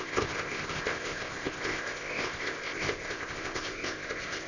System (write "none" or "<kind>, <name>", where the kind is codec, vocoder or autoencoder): codec, ZipCodec